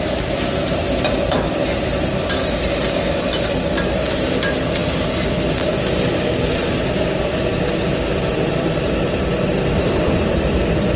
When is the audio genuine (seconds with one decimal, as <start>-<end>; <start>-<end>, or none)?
0.0-11.0